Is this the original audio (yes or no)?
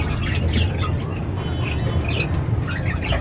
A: yes